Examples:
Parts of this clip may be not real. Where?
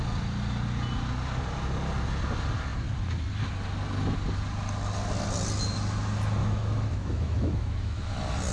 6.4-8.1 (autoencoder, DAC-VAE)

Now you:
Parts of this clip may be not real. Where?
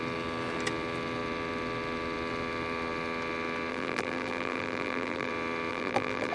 3.7-5.3 (vocoder, BigVGAN v2); 5.7-6.3